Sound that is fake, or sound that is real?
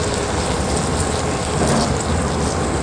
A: real